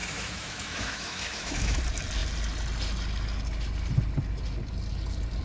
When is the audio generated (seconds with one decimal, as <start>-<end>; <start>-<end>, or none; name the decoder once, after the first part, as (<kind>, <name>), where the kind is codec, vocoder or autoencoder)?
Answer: 0.0-1.8 (autoencoder, DAC-VAE)